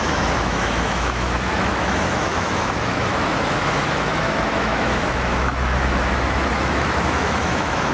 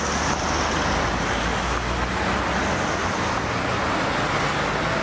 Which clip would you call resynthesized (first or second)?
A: first